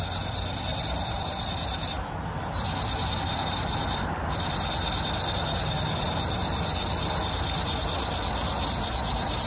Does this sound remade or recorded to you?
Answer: recorded